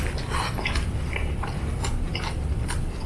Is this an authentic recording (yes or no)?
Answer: yes